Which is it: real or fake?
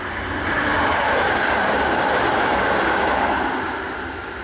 real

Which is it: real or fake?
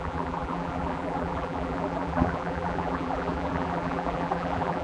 fake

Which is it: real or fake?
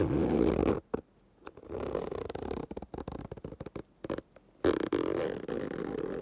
real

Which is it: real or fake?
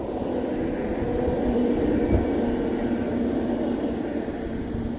fake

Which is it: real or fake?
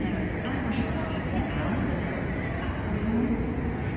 real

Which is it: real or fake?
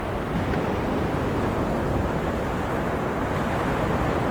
real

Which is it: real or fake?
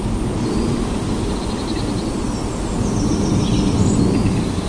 real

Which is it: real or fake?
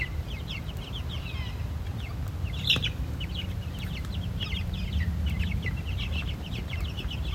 fake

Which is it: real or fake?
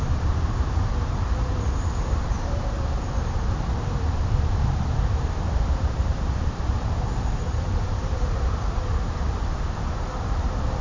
fake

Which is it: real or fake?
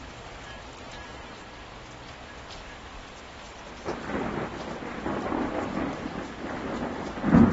real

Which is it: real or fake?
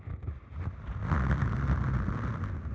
real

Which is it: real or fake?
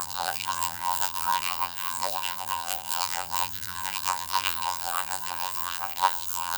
fake